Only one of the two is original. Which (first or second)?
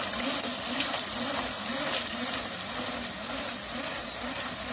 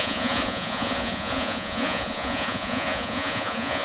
first